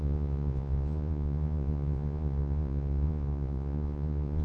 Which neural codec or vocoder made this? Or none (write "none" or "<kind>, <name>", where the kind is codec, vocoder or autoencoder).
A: vocoder, Vocos